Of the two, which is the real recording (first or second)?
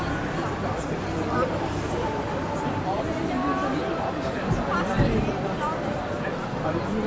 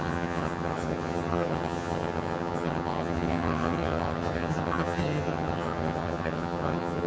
first